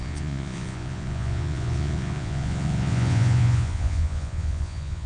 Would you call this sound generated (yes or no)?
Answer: yes